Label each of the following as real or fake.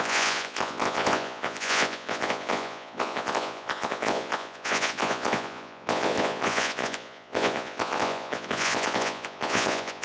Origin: fake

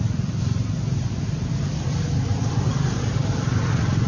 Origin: fake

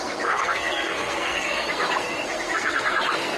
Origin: fake